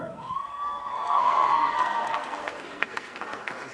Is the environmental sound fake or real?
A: fake